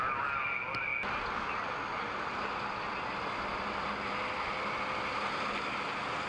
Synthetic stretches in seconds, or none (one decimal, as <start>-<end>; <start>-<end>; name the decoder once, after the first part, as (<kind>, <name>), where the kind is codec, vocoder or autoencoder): none